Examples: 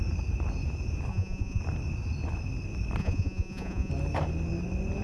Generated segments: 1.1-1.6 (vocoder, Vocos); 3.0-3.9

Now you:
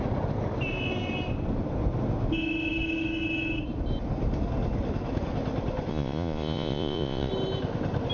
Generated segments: 5.9-7.3 (vocoder, Vocos)

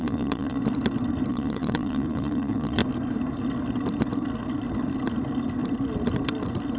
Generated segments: 0.0-0.6 (vocoder, Vocos); 1.3-2.8

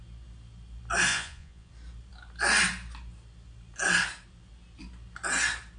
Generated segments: 1.1-1.7 (vocoder, Vocos)